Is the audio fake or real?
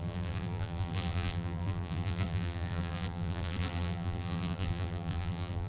fake